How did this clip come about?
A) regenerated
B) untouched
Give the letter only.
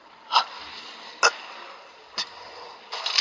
B